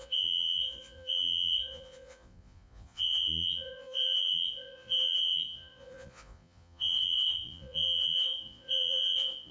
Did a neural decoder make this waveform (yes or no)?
yes